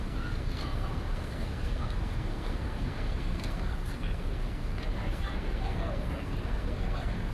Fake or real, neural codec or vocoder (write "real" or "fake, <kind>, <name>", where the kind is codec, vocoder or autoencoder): fake, codec, SNAC